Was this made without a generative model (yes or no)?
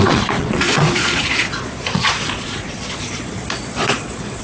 no